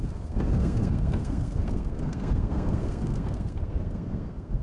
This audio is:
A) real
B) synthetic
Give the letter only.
B